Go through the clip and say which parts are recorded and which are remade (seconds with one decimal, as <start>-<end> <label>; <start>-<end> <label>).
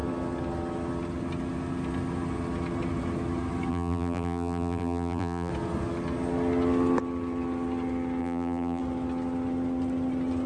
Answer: 0.0-3.7 recorded; 3.7-5.5 remade; 5.5-8.2 recorded; 8.2-8.8 remade; 8.8-10.5 recorded